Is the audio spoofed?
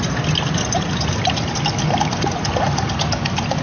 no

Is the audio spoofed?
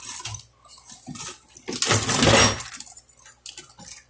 no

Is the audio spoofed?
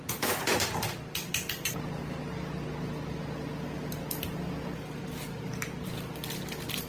no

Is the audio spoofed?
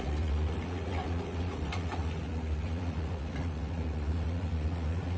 yes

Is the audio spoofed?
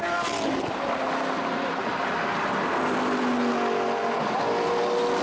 no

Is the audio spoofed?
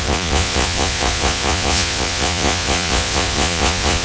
yes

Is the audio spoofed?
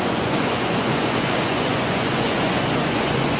yes